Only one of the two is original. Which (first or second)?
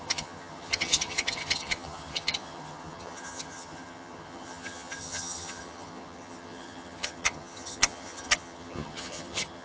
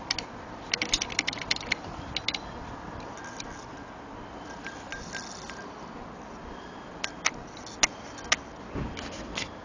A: second